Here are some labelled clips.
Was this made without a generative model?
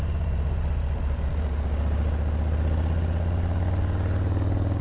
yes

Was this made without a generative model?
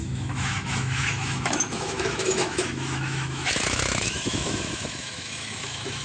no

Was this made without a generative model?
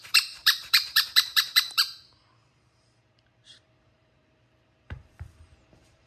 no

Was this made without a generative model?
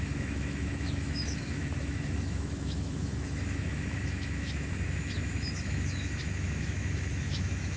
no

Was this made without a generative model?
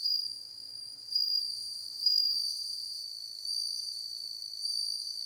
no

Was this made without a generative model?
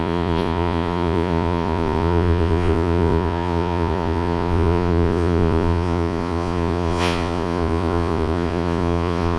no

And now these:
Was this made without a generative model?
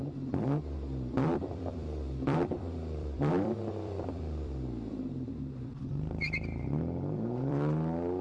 no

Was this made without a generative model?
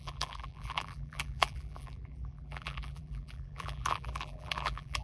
no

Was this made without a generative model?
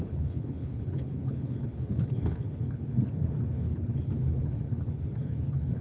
no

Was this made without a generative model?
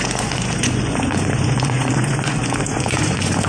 no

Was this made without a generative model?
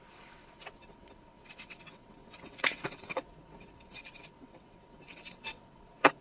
no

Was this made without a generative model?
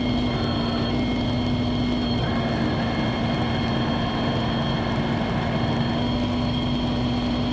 yes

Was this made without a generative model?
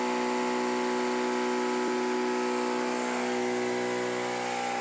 yes